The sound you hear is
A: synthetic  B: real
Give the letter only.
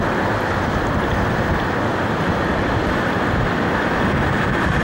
B